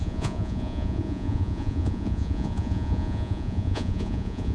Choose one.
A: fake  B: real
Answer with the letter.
A